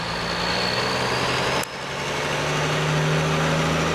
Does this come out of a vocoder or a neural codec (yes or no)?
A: no